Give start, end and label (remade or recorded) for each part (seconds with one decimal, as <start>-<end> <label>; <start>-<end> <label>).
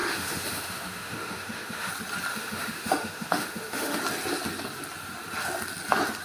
0.0-1.9 remade; 1.9-2.3 recorded; 2.3-4.0 remade; 4.0-6.2 recorded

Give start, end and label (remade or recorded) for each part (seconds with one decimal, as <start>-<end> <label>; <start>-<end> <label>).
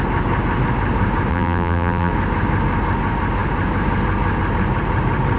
0.0-1.3 recorded; 1.3-2.1 remade; 2.1-5.4 recorded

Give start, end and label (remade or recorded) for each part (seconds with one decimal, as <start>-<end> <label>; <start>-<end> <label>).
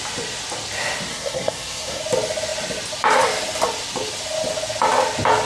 0.0-1.1 recorded; 1.1-2.0 remade; 2.0-5.4 recorded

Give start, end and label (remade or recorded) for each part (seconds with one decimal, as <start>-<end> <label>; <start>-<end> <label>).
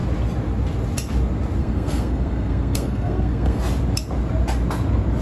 0.0-1.6 recorded; 1.6-3.6 remade; 3.6-5.2 recorded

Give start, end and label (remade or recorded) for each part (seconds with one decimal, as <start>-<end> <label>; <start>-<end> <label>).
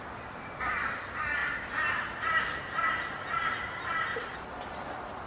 0.0-1.4 recorded; 1.4-4.6 remade; 4.6-5.3 recorded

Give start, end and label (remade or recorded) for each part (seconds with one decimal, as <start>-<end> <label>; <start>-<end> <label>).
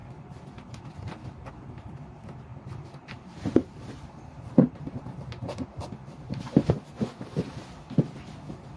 0.0-2.5 recorded; 2.5-6.7 remade; 6.7-8.8 recorded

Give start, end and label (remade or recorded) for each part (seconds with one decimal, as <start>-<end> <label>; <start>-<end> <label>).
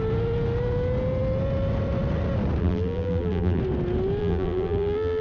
0.0-2.6 recorded; 2.6-3.6 remade; 3.6-4.2 recorded; 4.2-5.2 remade